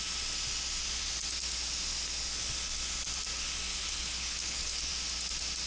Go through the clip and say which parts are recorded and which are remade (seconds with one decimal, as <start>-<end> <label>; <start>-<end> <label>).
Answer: 0.0-3.7 recorded; 3.7-4.9 remade; 4.9-5.7 recorded